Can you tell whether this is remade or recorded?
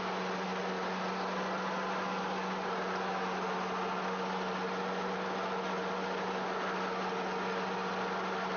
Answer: recorded